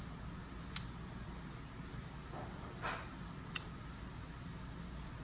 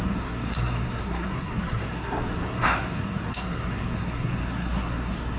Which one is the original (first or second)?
first